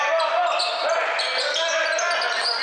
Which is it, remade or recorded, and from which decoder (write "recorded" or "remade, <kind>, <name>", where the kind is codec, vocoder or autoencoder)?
recorded